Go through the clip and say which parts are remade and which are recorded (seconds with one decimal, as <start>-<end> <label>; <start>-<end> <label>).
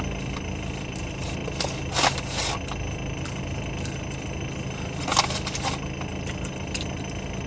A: 0.0-7.5 recorded